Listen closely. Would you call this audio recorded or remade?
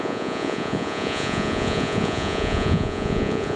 remade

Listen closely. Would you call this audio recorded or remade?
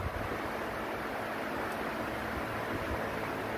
recorded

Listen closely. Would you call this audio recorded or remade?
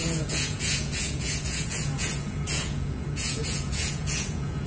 remade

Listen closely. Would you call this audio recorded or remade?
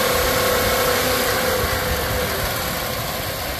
recorded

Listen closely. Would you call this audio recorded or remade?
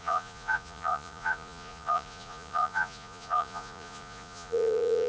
remade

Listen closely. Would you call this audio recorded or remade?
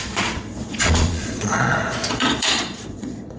remade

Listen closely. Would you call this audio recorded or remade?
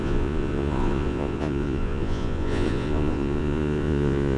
remade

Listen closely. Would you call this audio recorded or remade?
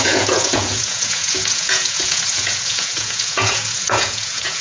remade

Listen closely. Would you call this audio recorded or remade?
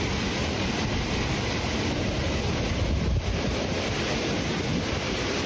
recorded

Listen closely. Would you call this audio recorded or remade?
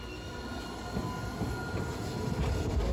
recorded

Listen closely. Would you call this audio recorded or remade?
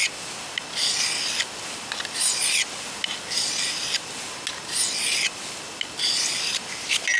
recorded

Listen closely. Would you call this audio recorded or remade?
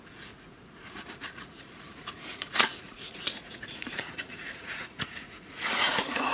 remade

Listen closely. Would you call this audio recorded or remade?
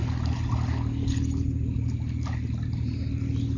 recorded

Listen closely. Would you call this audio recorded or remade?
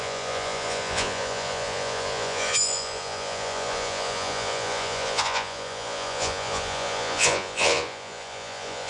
remade